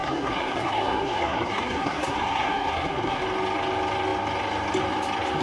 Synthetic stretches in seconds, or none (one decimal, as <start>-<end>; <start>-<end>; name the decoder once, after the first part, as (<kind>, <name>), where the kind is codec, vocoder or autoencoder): 0.0-3.2 (codec, SNAC)